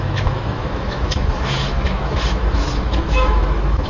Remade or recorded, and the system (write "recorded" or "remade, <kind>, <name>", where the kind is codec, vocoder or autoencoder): remade, autoencoder, DAC-VAE